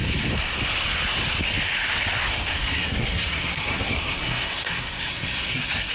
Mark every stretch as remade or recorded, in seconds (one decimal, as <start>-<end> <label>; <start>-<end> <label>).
0.0-2.5 recorded; 2.5-5.9 remade